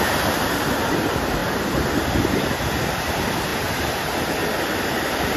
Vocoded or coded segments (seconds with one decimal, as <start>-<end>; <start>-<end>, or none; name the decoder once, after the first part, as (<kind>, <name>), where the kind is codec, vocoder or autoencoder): none